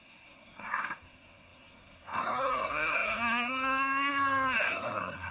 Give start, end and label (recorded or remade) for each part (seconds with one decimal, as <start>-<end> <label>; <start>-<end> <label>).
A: 0.0-5.3 remade